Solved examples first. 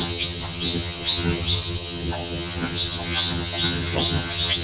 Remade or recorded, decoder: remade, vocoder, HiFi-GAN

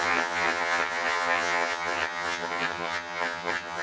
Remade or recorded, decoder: remade, vocoder, HiFi-GAN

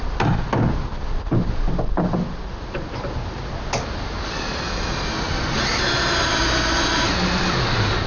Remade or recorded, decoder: recorded